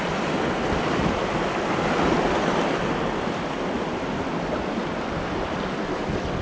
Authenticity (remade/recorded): recorded